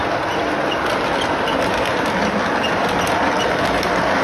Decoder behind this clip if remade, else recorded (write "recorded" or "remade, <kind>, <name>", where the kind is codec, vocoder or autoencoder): recorded